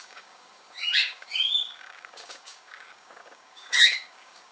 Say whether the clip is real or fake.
fake